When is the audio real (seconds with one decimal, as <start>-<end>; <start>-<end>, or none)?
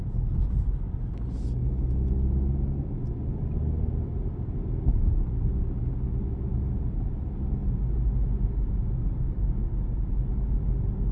0.0-11.1